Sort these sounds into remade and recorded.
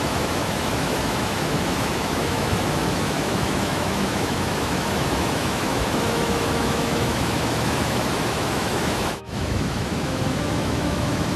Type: remade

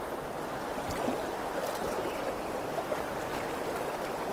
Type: recorded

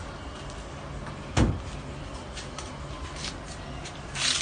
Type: recorded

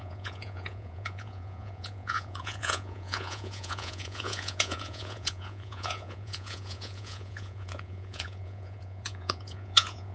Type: remade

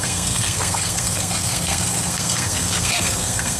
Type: remade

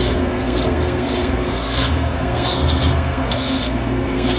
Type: remade